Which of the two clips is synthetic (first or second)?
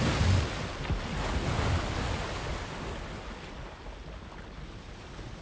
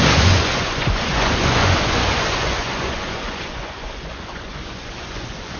second